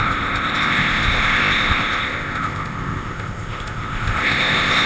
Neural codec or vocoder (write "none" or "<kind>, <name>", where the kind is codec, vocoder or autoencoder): codec, ZipCodec